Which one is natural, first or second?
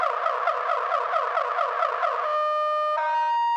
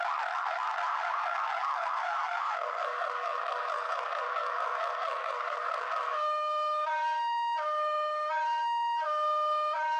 first